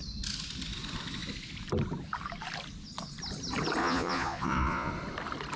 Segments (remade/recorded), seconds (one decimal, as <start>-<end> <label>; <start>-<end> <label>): 0.0-3.8 recorded; 3.8-4.9 remade; 4.9-5.6 recorded

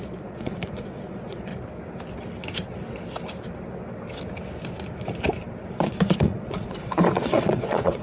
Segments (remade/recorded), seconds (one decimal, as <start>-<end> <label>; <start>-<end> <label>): 0.0-1.5 remade; 1.5-5.7 recorded; 5.7-8.0 remade

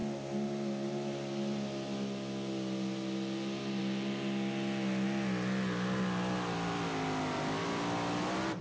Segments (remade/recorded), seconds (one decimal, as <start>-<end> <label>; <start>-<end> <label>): 0.0-8.6 recorded

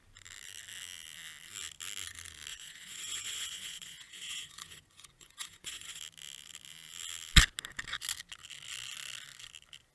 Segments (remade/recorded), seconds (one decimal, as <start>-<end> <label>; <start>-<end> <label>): 0.0-2.5 recorded; 2.5-6.0 remade; 6.0-9.9 recorded

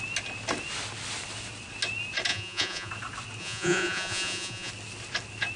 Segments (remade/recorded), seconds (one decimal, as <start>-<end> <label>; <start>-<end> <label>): 0.0-2.3 recorded; 2.3-2.9 remade; 2.9-3.4 recorded; 3.4-4.7 remade; 4.7-5.6 recorded

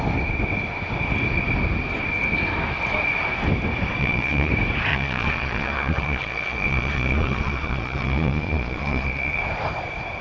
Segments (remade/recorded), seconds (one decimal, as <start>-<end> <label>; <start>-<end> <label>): 0.0-4.0 recorded; 4.0-4.5 remade; 4.5-4.9 recorded; 4.9-9.4 remade; 9.4-10.2 recorded